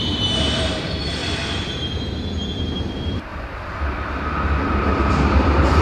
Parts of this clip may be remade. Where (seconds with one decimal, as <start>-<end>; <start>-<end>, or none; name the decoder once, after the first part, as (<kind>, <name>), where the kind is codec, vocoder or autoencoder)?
0.0-1.2 (vocoder, BigVGAN v2); 2.6-3.3; 4.8-5.8